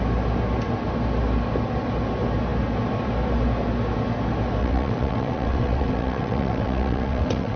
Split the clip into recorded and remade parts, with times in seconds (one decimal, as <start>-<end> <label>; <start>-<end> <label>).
0.0-4.6 recorded; 4.6-7.6 remade